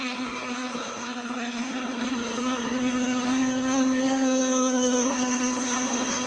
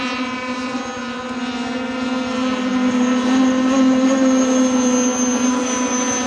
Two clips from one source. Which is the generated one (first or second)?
first